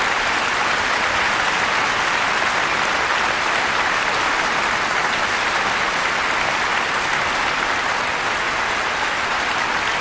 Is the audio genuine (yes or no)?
yes